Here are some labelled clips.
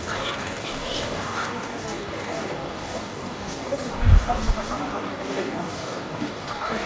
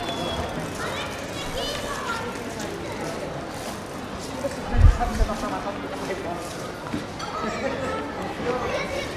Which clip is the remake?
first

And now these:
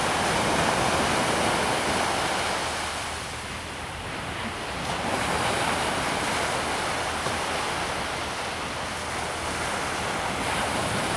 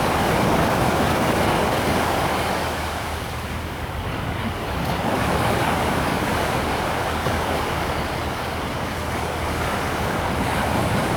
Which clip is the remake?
second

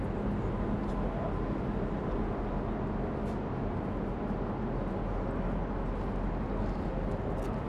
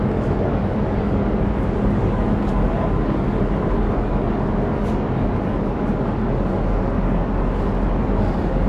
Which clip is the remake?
second